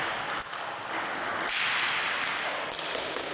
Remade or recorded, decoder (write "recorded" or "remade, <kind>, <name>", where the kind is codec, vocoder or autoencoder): recorded